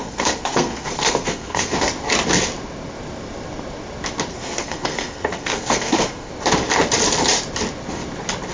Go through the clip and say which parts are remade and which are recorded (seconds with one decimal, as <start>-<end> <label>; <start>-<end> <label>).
0.0-1.9 remade; 1.9-4.3 recorded; 4.3-6.3 remade; 6.3-8.5 recorded